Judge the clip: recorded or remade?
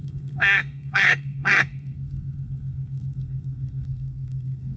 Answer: remade